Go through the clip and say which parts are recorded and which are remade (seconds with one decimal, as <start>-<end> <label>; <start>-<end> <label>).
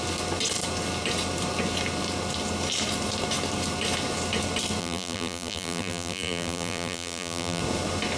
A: 0.0-4.8 recorded; 4.8-7.6 remade; 7.6-8.2 recorded